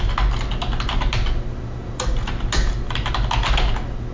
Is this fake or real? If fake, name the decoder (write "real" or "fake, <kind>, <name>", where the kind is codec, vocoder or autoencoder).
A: real